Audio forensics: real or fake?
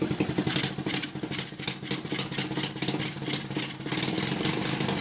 real